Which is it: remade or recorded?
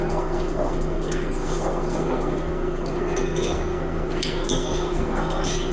remade